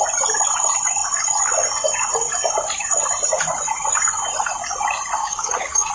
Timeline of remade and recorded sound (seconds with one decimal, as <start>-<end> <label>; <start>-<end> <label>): 0.0-5.2 recorded; 5.2-5.9 remade

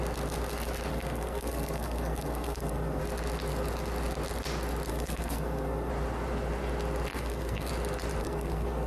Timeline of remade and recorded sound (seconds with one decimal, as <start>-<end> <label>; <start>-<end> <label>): 0.0-0.9 recorded; 0.9-3.0 remade; 3.0-4.9 recorded; 4.9-5.9 remade; 5.9-7.1 recorded; 7.1-7.7 remade; 7.7-8.2 recorded; 8.2-8.9 remade

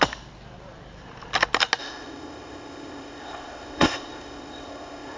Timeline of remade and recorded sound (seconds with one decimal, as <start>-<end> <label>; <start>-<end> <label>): 0.0-1.8 recorded; 1.8-5.2 remade

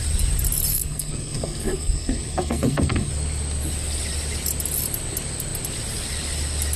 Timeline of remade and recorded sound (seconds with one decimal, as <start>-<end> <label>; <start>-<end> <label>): 0.0-0.7 recorded; 0.7-3.1 remade; 3.1-6.8 recorded